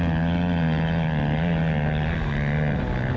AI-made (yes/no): no